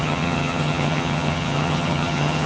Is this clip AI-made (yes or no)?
yes